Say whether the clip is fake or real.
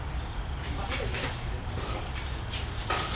real